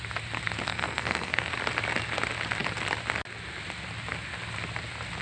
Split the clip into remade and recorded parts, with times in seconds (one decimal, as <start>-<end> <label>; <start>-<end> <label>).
0.0-0.7 recorded; 0.7-1.5 remade; 1.5-5.2 recorded